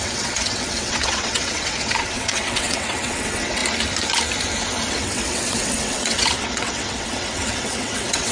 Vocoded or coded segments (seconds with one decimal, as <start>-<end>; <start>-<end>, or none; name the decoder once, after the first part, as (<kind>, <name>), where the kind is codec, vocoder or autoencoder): 0.0-3.6 (vocoder, WaveNeXt); 4.9-8.3